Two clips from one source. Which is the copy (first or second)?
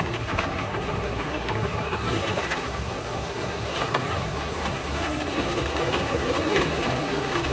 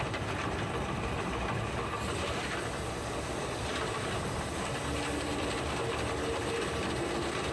first